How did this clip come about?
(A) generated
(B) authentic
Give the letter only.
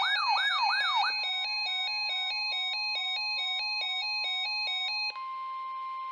B